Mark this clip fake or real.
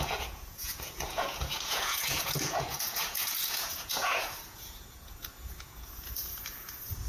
fake